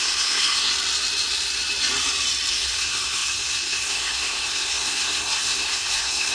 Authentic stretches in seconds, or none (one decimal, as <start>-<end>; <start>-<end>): 0.7-2.5